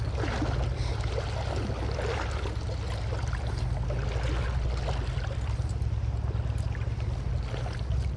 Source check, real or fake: real